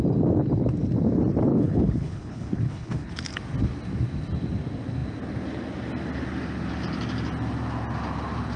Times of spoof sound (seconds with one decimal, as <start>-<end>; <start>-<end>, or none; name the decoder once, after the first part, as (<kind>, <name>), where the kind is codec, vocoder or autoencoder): 1.5-3.1 (codec, HILCodec)